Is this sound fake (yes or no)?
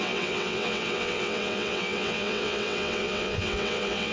yes